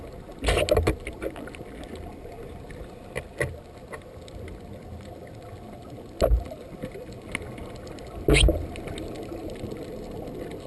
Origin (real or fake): real